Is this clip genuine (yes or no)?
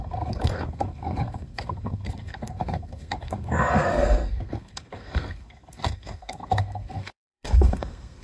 no